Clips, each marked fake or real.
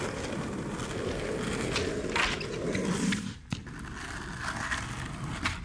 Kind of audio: real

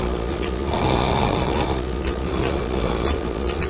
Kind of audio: fake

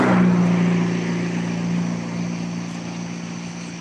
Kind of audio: real